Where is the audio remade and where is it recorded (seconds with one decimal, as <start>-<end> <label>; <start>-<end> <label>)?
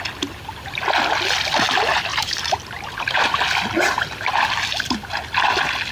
0.0-2.1 recorded; 2.1-3.3 remade; 3.3-5.9 recorded